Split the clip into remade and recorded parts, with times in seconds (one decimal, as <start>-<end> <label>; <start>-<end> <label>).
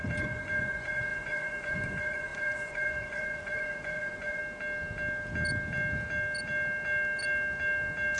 0.0-4.4 remade; 4.4-8.2 recorded